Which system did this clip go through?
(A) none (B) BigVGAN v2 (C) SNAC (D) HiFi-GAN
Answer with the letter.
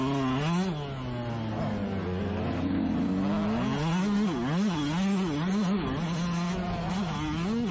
A